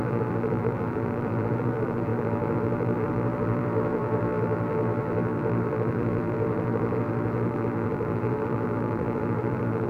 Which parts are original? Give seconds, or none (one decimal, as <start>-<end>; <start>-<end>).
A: none

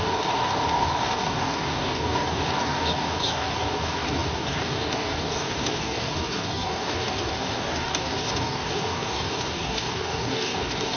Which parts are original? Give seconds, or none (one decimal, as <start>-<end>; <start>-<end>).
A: none

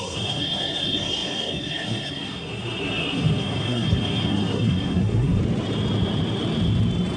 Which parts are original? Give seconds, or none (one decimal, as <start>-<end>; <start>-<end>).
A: 5.4-7.2